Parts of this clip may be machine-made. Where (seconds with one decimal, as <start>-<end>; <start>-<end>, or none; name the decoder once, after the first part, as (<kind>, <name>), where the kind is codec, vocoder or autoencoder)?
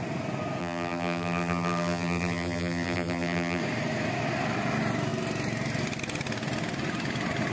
0.6-3.6 (vocoder, BigVGAN v2)